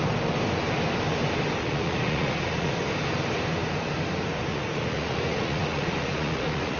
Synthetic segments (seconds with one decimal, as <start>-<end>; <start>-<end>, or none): 1.6-2.7; 4.5-6.8